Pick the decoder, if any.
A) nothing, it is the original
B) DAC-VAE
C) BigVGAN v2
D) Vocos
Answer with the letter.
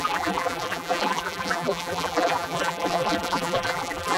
C